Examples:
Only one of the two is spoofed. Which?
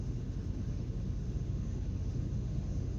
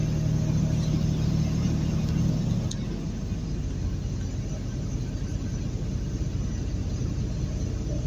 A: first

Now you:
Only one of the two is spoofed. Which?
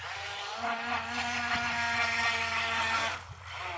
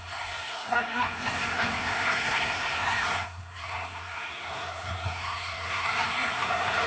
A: second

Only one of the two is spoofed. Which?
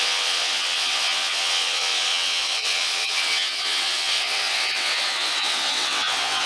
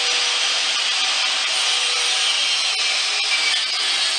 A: first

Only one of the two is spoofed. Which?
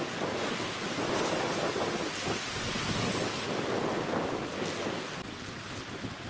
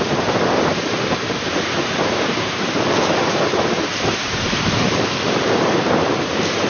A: second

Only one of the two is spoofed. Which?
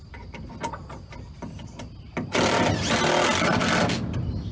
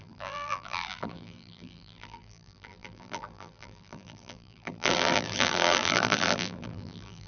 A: second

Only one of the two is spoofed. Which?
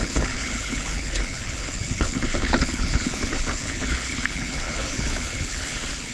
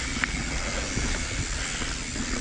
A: first